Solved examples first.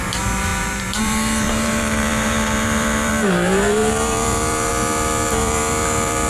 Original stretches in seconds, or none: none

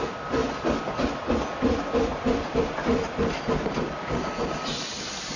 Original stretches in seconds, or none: 0.0-5.4

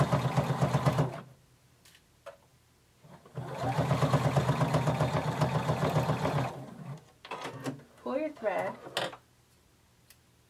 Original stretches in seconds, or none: 0.0-10.5

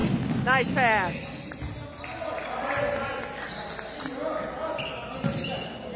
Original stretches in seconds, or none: 0.0-6.0

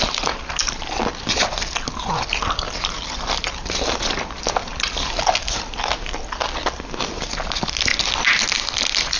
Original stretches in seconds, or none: 0.0-9.2

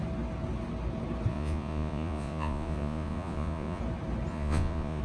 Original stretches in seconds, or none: 0.0-1.3; 3.8-4.3

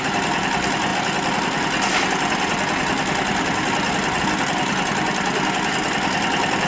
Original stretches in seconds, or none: 0.0-6.7

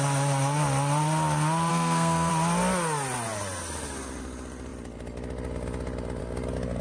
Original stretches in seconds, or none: 0.0-1.7; 2.3-6.8